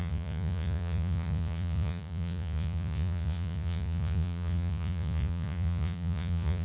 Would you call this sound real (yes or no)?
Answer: no